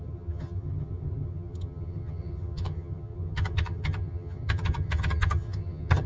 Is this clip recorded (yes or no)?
no